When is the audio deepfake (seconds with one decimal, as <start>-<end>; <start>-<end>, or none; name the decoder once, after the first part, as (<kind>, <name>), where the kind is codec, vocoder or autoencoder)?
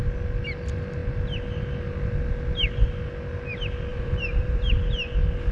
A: 3.9-4.7 (vocoder, BigVGAN v2)